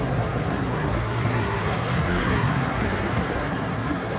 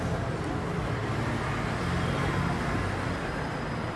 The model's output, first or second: first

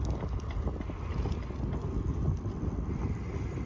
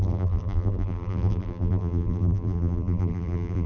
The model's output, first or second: second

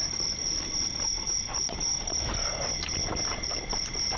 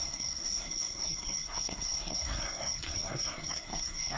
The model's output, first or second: second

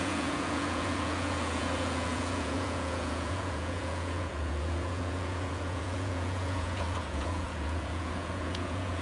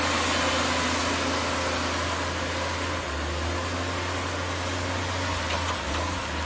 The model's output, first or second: first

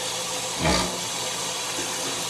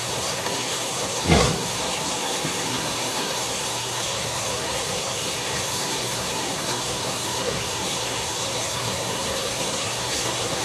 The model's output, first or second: second